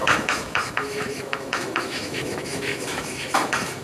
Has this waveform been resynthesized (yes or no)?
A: yes